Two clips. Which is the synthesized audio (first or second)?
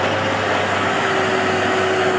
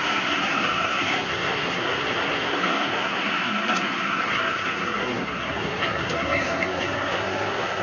second